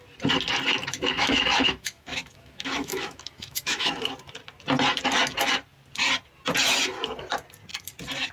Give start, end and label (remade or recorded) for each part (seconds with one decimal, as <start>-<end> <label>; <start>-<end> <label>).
0.0-0.8 recorded; 0.8-3.9 remade; 3.9-8.3 recorded